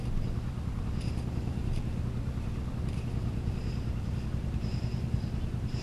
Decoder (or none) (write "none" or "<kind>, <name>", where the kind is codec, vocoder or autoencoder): vocoder, BigVGAN v2